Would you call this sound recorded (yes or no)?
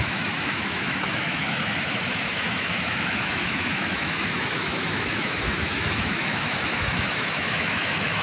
no